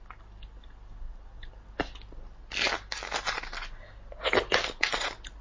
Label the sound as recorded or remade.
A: recorded